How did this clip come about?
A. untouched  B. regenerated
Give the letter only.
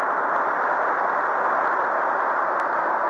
A